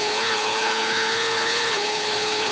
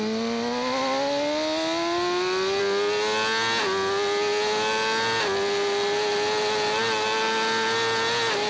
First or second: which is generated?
first